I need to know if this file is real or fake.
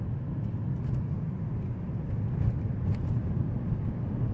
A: real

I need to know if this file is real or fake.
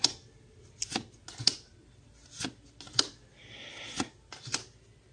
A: real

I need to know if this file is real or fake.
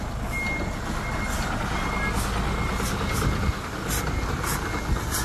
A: real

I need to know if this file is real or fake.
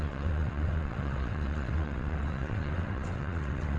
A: fake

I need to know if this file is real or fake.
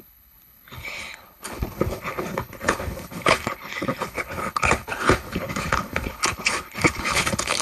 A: fake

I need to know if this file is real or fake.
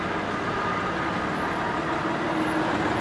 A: real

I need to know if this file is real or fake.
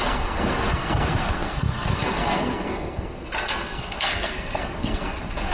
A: fake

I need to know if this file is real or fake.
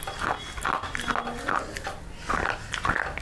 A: real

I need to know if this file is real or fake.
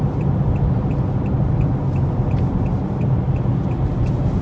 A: real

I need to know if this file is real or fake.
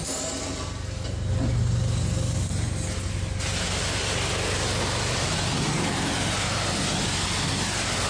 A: real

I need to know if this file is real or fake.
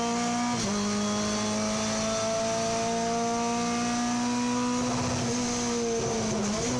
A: real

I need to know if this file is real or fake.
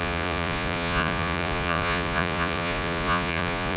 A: fake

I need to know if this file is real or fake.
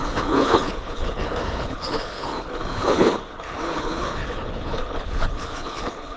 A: fake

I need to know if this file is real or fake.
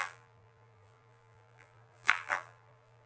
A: fake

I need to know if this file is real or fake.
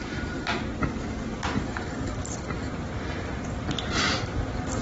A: real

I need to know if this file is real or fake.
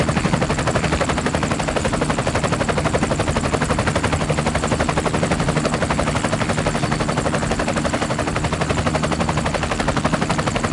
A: real